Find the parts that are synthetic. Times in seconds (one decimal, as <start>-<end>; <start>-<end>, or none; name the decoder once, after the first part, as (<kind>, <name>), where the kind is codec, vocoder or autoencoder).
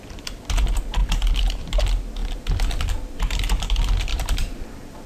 1.0-1.6 (vocoder, BigVGAN v2); 4.1-5.1